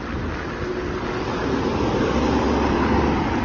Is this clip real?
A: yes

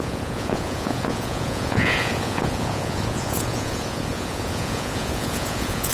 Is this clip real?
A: no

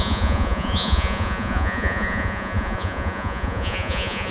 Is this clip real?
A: no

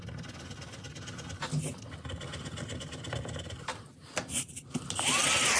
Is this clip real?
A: yes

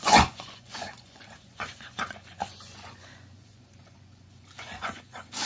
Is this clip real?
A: no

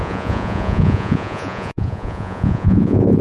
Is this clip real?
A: no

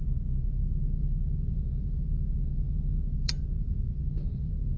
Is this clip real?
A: no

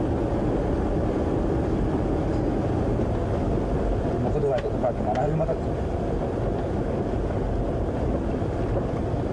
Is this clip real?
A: yes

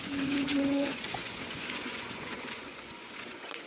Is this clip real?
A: no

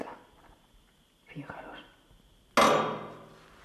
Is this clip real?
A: yes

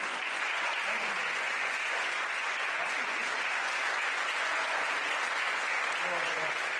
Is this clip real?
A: no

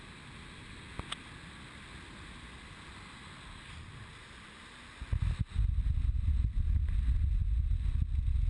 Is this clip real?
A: yes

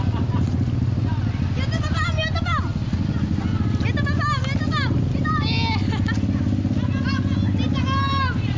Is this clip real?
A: yes